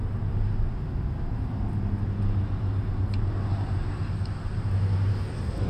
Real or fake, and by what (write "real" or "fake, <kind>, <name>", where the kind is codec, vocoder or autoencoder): real